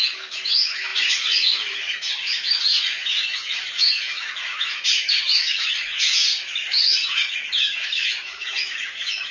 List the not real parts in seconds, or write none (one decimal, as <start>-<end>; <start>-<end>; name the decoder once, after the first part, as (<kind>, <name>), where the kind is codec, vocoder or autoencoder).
0.0-9.3 (autoencoder, DAC-VAE)

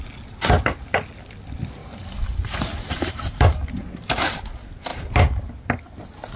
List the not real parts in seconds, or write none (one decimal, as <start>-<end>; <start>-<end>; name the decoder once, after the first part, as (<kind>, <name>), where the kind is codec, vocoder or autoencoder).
1.8-3.7 (vocoder, BigVGAN v2)

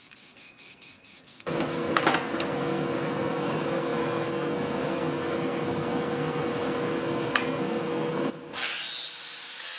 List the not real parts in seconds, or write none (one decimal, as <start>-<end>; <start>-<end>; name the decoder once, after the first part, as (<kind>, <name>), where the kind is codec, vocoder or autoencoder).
0.0-8.7 (codec, SNAC)

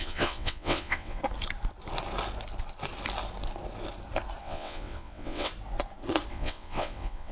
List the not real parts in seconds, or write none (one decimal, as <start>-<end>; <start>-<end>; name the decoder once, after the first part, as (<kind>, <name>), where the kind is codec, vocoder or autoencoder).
0.0-1.2 (vocoder, WaveNeXt); 4.4-5.5; 6.3-7.3